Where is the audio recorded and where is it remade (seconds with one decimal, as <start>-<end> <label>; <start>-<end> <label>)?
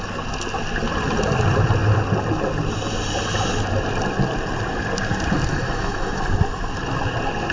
0.0-5.5 recorded; 5.5-6.2 remade; 6.2-7.5 recorded